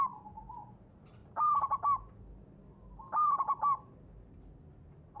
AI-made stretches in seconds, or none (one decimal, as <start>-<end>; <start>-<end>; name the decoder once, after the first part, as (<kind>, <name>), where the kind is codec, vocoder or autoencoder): none